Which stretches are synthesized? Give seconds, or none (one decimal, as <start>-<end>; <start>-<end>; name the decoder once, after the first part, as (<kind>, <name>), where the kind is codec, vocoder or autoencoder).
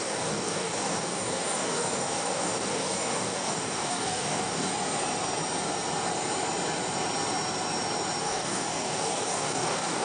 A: 0.0-4.7 (codec, DAC); 8.2-10.0